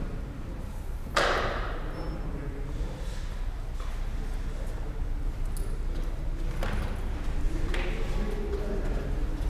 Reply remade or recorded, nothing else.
recorded